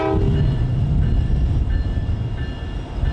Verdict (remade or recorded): recorded